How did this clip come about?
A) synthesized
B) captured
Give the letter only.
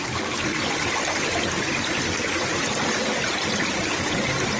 B